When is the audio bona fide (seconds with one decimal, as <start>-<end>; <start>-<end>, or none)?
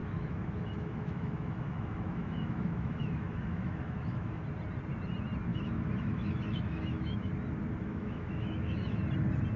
4.4-5.5; 7.3-7.9; 9.0-9.6